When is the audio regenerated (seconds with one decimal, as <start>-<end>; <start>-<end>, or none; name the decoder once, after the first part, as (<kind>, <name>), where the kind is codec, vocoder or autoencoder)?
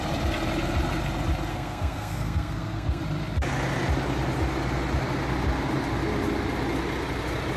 1.5-3.0 (codec, SNAC)